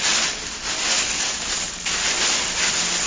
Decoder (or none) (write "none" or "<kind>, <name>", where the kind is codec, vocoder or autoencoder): none